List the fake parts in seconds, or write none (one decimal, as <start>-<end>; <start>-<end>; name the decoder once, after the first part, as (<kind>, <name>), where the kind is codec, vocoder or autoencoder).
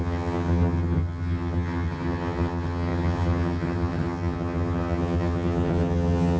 0.0-6.4 (vocoder, HiFi-GAN)